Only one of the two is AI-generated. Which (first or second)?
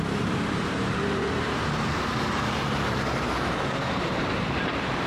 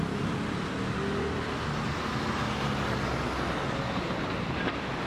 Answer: first